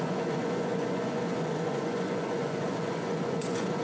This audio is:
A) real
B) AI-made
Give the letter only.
B